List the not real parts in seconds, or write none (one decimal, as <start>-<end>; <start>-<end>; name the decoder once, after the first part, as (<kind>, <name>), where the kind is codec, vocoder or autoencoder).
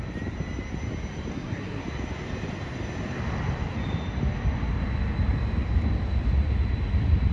1.3-1.8 (codec, SNAC)